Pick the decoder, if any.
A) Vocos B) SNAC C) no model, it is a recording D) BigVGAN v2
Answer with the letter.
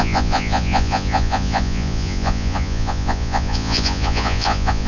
A